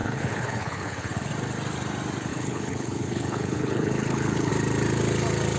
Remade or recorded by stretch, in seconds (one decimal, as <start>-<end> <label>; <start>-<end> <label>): 0.0-1.3 remade; 1.3-2.3 recorded; 2.3-4.5 remade; 4.5-5.6 recorded